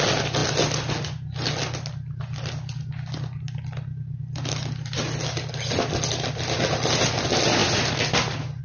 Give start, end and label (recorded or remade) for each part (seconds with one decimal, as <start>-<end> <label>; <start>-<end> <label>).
0.0-8.6 recorded